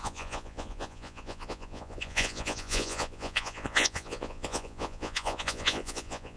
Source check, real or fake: fake